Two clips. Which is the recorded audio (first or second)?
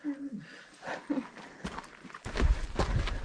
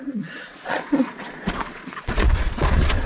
first